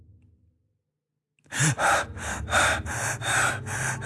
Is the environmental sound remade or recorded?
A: recorded